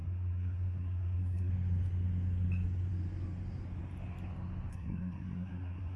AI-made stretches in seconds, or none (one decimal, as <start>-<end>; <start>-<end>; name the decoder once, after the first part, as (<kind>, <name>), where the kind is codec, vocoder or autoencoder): 0.0-1.5 (codec, SNAC); 4.7-6.0